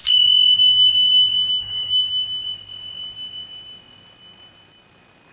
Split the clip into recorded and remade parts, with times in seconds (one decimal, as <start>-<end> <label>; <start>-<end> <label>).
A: 0.0-1.5 recorded; 1.5-2.0 remade; 2.0-5.3 recorded